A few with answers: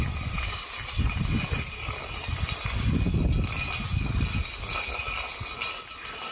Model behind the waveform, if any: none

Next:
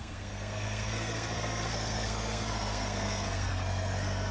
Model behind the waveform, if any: codec, SNAC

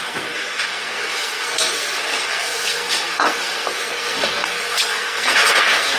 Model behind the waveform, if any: codec, SNAC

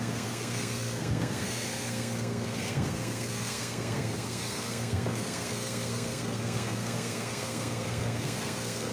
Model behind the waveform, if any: codec, SNAC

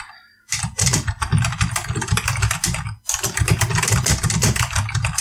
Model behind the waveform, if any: none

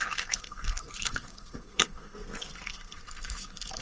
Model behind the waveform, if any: codec, SNAC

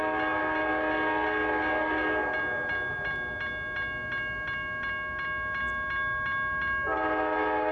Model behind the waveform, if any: none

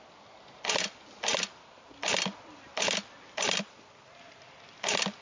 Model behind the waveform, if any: none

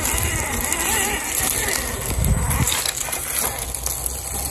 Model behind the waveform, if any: none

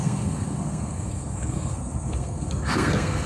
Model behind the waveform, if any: codec, SNAC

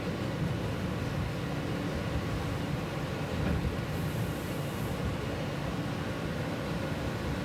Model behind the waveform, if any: none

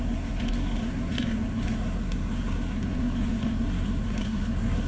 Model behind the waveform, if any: codec, SNAC